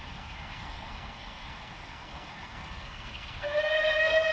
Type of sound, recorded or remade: remade